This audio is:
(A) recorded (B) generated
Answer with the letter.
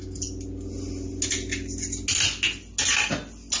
A